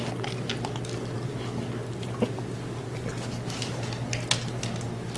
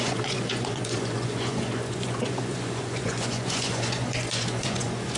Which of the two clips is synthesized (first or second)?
second